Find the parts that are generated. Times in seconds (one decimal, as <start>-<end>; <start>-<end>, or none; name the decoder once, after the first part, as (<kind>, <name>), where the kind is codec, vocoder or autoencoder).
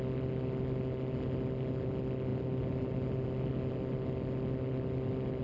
none